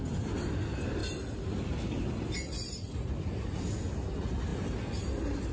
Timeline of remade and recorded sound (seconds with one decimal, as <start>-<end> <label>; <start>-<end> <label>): 0.0-5.5 recorded